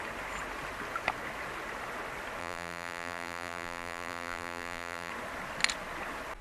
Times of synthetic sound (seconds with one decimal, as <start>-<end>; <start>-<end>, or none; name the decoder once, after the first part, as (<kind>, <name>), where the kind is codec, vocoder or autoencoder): 2.4-5.1 (vocoder, BigVGAN v2)